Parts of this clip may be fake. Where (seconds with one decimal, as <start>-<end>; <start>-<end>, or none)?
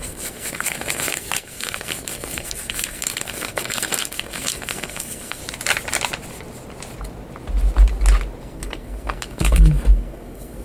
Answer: 0.0-5.4; 8.4-10.6